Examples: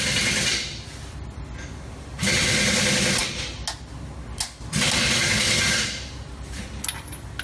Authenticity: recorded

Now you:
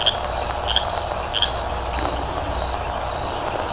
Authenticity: recorded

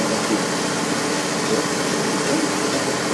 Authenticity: recorded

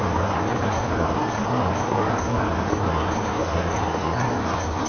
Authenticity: remade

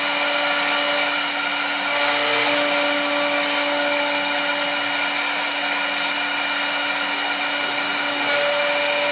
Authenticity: recorded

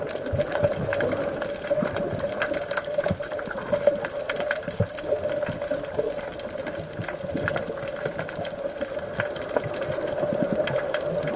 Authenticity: recorded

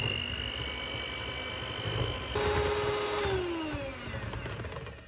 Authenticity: recorded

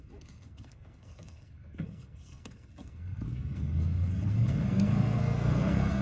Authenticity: remade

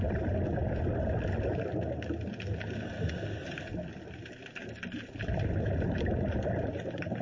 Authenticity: recorded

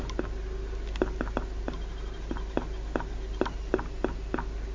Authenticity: recorded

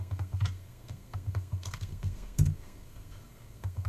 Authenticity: remade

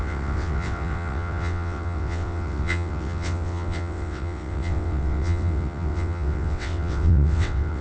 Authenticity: remade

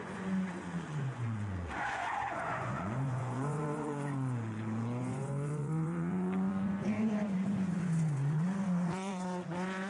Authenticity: remade